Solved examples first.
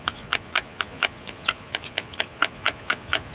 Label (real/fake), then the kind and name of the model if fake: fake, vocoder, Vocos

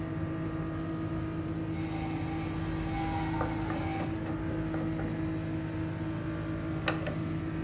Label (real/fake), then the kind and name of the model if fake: real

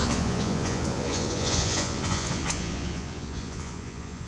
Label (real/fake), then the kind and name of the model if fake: fake, vocoder, Vocos